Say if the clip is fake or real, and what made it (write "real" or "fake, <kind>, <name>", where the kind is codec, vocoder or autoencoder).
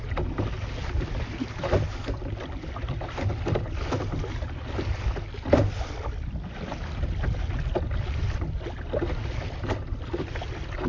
real